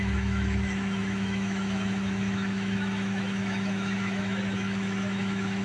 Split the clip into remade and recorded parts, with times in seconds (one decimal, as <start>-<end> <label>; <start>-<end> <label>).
0.0-5.6 remade